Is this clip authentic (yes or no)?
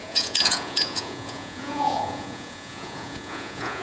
no